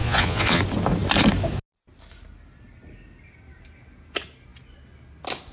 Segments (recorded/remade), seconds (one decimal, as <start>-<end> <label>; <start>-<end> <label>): 0.0-0.6 remade; 0.6-5.5 recorded